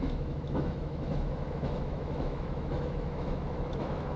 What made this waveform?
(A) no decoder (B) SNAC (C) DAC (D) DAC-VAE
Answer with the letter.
D